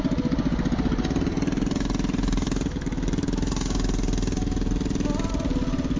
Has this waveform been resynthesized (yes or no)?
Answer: no